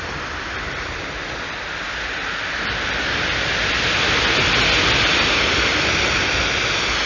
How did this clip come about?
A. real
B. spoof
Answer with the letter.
A